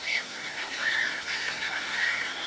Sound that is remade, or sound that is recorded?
remade